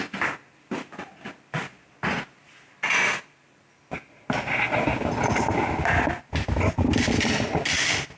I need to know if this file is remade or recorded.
recorded